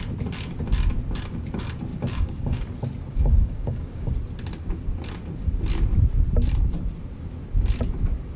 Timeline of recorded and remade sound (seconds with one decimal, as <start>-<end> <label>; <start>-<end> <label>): 0.0-1.9 recorded; 1.9-2.7 remade; 2.7-3.1 recorded; 3.1-4.1 remade; 4.1-8.4 recorded